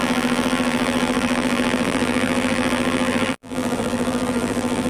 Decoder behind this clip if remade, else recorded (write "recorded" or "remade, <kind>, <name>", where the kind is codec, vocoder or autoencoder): remade, vocoder, BigVGAN v2